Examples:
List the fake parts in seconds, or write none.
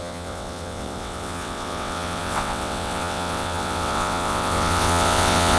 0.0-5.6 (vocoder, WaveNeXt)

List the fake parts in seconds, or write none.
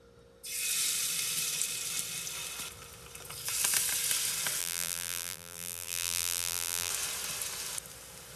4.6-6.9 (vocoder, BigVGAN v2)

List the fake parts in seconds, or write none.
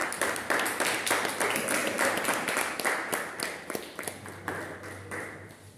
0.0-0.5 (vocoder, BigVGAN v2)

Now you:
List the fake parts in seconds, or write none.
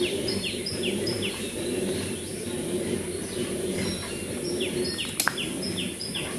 0.0-3.9 (vocoder, BigVGAN v2); 5.9-6.4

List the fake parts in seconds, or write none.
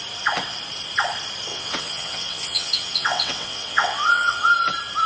1.5-4.5 (vocoder, WaveNeXt)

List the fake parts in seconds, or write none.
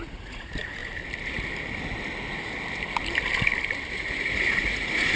0.0-0.8 (vocoder, Vocos); 3.9-5.2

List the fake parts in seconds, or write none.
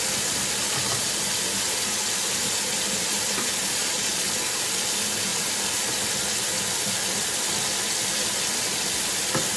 3.8-4.3 (vocoder, Vocos)